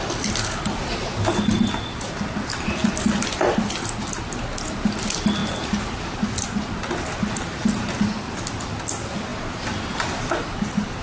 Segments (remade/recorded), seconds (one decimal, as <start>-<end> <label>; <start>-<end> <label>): 0.0-2.8 recorded; 2.8-3.6 remade; 3.6-9.3 recorded; 9.3-10.3 remade; 10.3-11.0 recorded